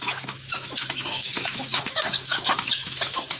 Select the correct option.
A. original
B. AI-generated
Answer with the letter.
B